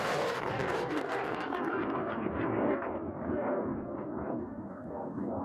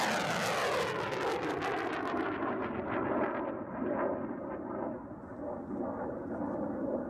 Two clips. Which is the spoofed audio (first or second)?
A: first